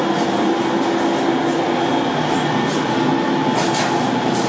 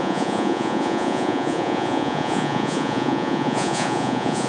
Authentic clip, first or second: first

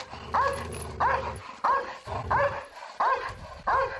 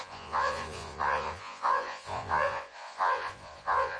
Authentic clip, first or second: first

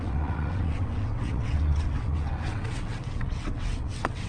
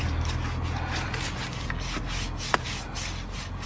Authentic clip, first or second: second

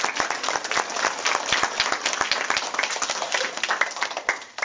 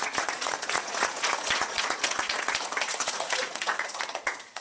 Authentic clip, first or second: first